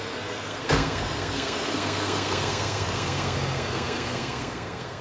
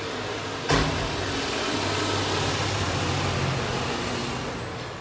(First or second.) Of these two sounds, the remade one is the first